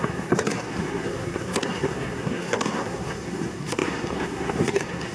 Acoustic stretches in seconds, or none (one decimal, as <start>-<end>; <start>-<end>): none